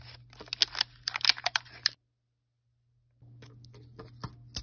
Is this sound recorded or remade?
recorded